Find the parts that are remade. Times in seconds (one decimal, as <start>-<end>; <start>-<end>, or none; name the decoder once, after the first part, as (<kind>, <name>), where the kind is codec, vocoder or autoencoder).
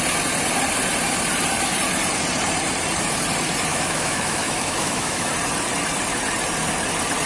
3.7-5.3 (autoencoder, DAC-VAE)